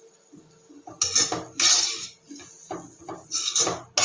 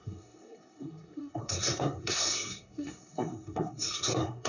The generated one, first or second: second